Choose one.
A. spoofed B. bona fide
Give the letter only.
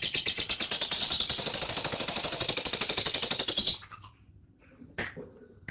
B